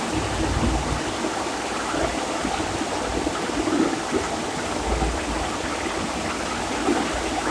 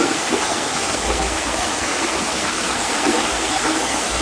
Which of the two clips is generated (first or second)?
second